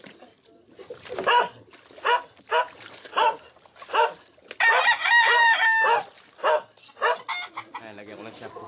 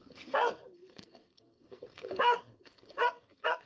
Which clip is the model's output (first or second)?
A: second